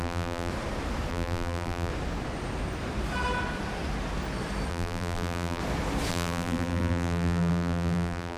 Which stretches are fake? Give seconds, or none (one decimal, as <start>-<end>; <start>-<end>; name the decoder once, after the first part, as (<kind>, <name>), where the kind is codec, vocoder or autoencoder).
0.0-0.5 (vocoder, BigVGAN v2); 1.1-1.9; 4.7-5.6; 6.1-8.4